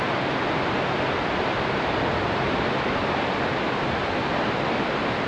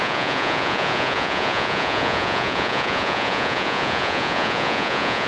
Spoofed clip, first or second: second